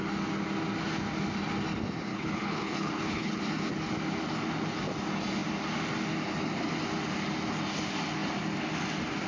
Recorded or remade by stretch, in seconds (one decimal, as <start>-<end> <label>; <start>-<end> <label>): 0.0-2.1 recorded; 2.1-3.4 remade; 3.4-9.3 recorded